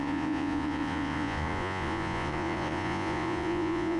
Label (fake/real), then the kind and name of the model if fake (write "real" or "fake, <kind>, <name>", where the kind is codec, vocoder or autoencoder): fake, vocoder, Vocos